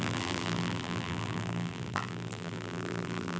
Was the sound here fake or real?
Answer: fake